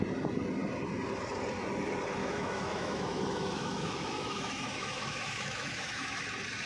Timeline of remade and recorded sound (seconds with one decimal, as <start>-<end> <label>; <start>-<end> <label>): 0.0-2.2 recorded; 2.2-6.2 remade; 6.2-6.7 recorded